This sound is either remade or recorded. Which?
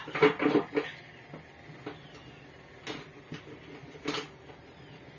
recorded